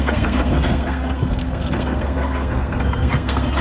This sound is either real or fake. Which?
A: fake